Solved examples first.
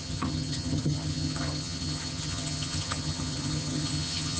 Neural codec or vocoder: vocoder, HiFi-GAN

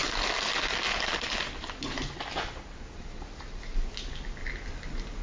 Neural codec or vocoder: none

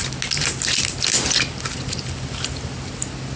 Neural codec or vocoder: none